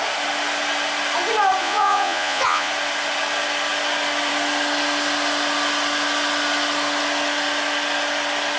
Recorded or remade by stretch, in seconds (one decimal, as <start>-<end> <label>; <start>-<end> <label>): 0.0-1.6 recorded; 1.6-2.7 remade; 2.7-8.6 recorded